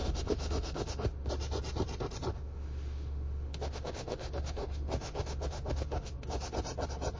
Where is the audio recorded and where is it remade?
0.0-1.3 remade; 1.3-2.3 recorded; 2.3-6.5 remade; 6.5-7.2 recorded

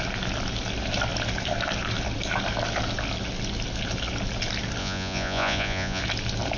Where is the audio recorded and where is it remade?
0.0-4.8 recorded; 4.8-6.0 remade; 6.0-6.6 recorded

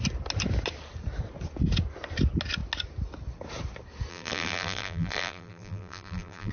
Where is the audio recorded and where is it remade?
0.0-4.1 recorded; 4.1-6.5 remade

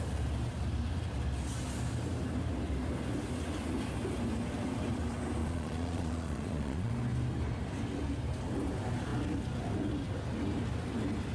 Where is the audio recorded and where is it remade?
0.0-5.4 recorded; 5.4-6.9 remade; 6.9-11.3 recorded